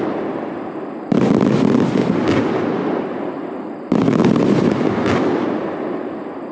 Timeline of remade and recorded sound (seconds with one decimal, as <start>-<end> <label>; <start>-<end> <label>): 0.0-6.5 recorded